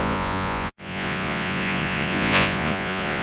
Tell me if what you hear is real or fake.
fake